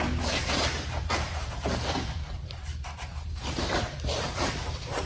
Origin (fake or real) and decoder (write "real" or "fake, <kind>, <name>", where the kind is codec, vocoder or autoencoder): fake, vocoder, BigVGAN v2